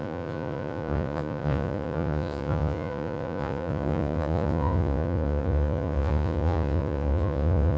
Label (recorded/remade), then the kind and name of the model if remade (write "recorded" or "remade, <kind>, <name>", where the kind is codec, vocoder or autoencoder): remade, vocoder, Vocos